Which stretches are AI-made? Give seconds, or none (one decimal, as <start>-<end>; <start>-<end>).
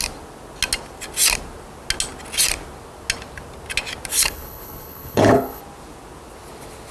4.1-5.6